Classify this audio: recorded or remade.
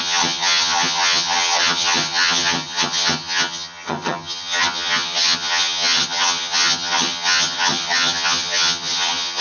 remade